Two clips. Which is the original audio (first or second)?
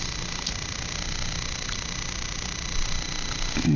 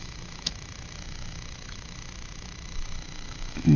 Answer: first